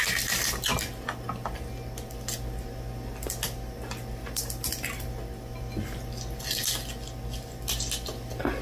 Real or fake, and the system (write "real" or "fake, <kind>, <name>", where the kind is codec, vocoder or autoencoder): real